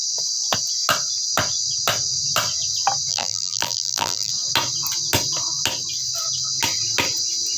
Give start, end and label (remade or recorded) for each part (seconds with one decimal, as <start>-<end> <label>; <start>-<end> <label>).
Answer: 0.0-3.1 recorded; 3.1-4.3 remade; 4.3-7.6 recorded